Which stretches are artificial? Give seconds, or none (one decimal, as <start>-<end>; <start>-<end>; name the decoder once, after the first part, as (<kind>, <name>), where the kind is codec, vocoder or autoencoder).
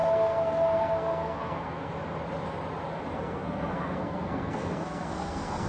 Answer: 0.0-1.9 (codec, SNAC); 3.1-5.7